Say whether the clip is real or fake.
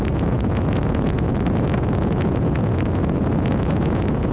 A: fake